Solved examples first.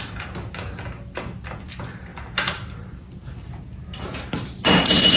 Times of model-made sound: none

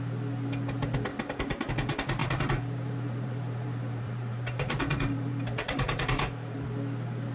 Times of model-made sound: 1.1-1.7 (vocoder, BigVGAN v2); 2.2-6.6